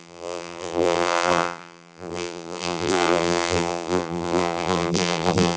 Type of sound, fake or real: fake